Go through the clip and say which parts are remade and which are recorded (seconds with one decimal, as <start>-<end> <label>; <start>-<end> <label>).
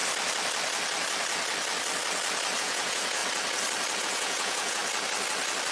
0.0-2.6 recorded; 2.6-3.2 remade; 3.2-4.0 recorded; 4.0-4.8 remade; 4.8-5.7 recorded